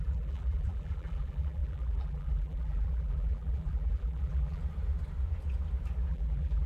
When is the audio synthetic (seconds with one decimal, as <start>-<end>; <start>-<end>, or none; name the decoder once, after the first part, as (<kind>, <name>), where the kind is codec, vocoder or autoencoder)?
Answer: 0.0-4.6 (vocoder, BigVGAN v2); 6.1-6.7

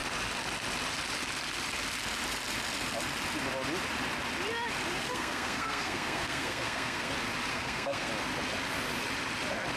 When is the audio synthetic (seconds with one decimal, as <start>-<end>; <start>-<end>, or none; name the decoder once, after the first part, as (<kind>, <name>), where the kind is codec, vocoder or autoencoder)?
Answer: 5.0-7.1 (codec, SNAC); 7.5-8.1

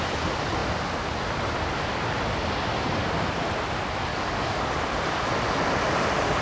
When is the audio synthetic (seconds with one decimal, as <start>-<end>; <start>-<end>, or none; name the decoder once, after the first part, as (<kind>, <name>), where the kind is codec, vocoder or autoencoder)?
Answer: 4.1-4.7 (codec, DAC)

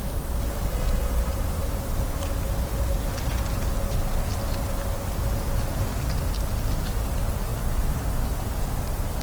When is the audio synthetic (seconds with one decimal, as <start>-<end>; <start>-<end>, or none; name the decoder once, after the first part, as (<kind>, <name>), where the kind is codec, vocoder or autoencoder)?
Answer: none